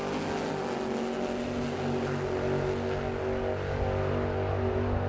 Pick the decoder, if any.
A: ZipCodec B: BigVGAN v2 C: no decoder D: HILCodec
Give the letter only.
C